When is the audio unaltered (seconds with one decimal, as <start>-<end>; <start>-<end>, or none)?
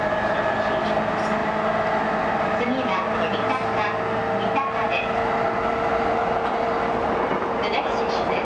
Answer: 0.0-8.4